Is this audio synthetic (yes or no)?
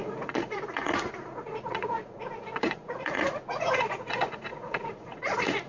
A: yes